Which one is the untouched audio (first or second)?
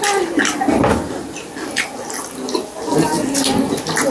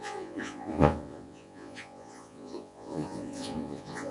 first